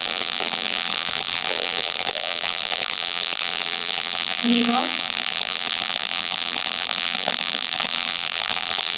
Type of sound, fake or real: fake